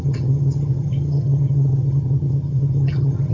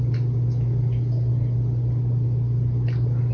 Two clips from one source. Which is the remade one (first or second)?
first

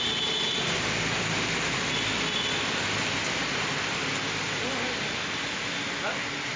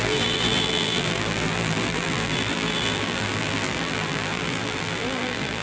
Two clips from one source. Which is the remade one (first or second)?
second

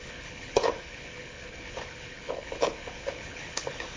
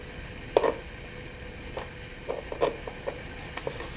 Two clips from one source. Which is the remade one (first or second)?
first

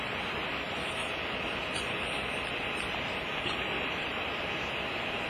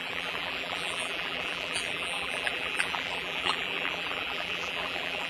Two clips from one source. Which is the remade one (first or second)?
second